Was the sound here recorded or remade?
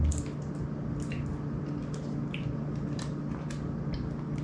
recorded